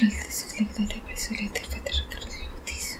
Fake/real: fake